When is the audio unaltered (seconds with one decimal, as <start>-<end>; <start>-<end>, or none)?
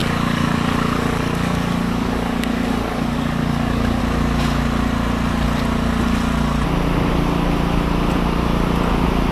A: 4.0-9.3